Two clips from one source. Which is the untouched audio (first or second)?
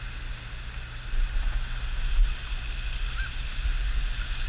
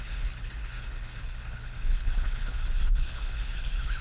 first